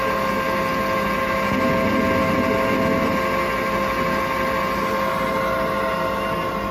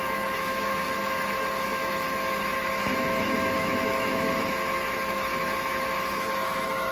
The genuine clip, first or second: first